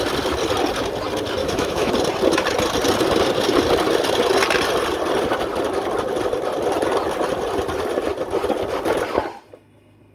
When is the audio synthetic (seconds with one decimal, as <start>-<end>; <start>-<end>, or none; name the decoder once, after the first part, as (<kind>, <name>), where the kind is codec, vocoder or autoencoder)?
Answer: 1.4-1.9 (autoencoder, DAC-VAE)